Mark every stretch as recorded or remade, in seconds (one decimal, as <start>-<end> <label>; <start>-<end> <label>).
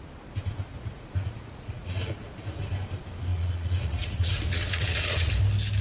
0.0-0.7 recorded; 0.7-2.2 remade; 2.2-3.3 recorded; 3.3-5.3 remade; 5.3-5.8 recorded